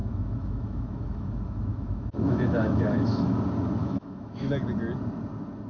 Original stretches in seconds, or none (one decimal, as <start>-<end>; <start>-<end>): 3.4-3.8; 4.5-5.7